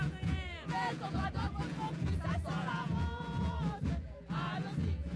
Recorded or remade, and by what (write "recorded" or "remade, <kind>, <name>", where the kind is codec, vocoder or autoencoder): remade, vocoder, Vocos